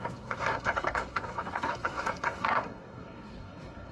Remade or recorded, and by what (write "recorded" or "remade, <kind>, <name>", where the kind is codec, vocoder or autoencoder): remade, codec, SNAC